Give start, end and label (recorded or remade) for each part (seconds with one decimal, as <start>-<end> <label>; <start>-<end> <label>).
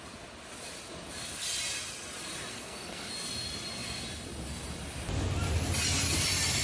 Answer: 0.0-2.5 recorded; 2.5-3.1 remade; 3.1-6.6 recorded